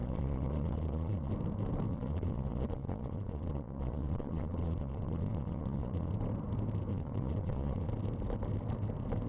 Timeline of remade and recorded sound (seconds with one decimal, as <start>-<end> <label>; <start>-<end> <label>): 0.0-1.3 remade; 1.3-1.9 recorded; 1.9-6.1 remade; 6.1-6.9 recorded; 6.9-7.9 remade; 7.9-9.3 recorded